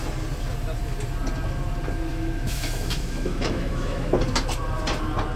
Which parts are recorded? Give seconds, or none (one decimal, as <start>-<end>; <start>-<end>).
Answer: 0.0-2.1; 4.1-5.4